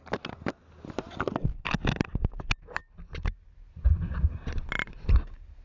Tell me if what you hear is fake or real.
real